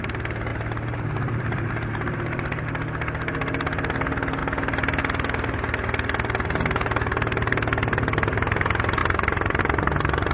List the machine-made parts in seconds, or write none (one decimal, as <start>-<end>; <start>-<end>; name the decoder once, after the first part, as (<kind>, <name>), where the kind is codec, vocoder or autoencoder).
0.5-2.6 (vocoder, BigVGAN v2); 9.0-9.6